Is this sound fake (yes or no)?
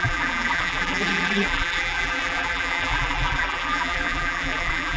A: yes